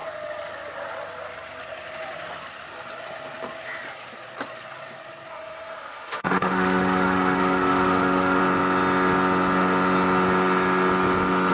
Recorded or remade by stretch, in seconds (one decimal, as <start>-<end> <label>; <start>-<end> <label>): 0.0-5.3 recorded; 5.3-8.4 remade; 8.4-11.5 recorded